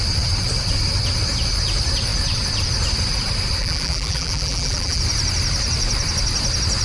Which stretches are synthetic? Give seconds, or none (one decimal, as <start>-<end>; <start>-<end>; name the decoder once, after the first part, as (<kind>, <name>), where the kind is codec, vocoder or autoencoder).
3.6-5.0 (vocoder, BigVGAN v2)